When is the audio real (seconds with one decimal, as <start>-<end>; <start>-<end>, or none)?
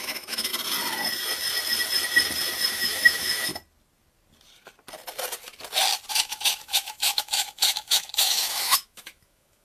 0.5-2.7; 3.5-6.1